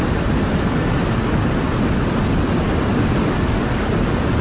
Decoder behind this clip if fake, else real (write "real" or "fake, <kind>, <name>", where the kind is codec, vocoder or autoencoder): real